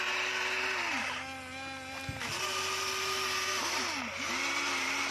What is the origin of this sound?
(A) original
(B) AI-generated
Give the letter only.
B